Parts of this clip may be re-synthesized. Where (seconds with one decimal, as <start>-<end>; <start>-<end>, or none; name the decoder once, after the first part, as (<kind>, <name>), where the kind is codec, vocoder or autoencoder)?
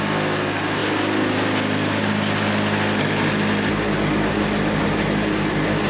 none